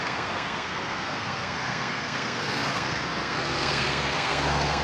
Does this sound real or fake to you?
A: fake